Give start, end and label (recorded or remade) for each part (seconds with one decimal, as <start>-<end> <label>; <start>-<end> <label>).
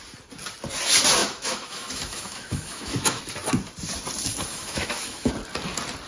0.0-1.2 recorded; 1.2-3.2 remade; 3.2-4.5 recorded; 4.5-5.3 remade; 5.3-6.1 recorded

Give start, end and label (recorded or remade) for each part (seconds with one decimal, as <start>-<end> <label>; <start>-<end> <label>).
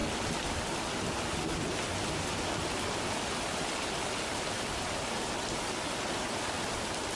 0.0-7.2 recorded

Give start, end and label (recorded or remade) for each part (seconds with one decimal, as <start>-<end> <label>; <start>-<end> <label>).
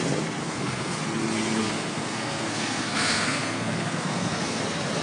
0.0-0.4 recorded; 0.4-1.0 remade; 1.0-1.6 recorded; 1.6-4.6 remade; 4.6-5.0 recorded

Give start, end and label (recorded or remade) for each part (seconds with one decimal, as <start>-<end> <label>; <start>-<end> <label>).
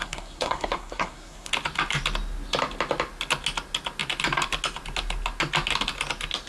0.0-1.5 remade; 1.5-6.5 recorded